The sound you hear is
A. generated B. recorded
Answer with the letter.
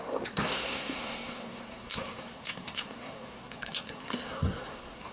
A